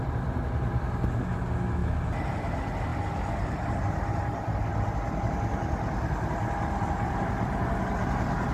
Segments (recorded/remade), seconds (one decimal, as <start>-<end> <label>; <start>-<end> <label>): 0.0-8.5 recorded